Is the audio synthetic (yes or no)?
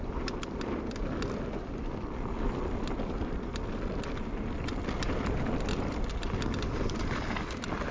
yes